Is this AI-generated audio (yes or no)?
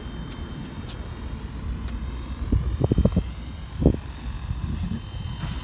no